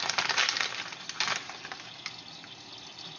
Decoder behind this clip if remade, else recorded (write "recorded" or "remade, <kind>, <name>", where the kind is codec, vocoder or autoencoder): recorded